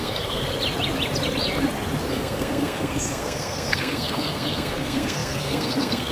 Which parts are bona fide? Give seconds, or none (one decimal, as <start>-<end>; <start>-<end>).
0.5-2.1